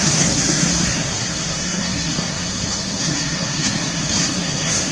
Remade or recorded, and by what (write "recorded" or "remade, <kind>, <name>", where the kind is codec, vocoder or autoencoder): remade, codec, SNAC